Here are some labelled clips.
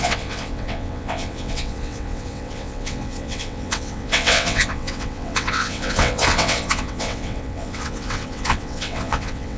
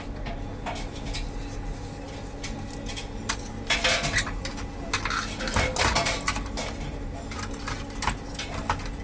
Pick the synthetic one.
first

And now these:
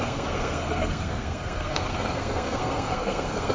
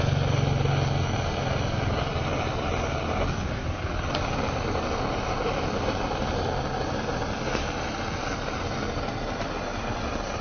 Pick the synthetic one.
first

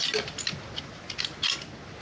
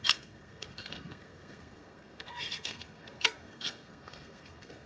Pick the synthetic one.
second